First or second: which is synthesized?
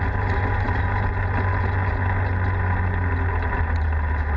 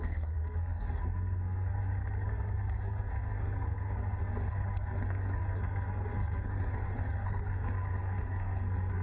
second